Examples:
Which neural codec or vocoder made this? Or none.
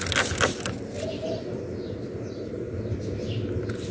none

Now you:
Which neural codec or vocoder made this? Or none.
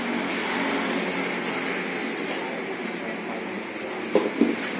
none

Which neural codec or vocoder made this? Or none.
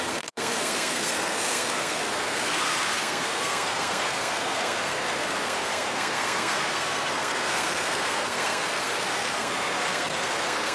codec, SNAC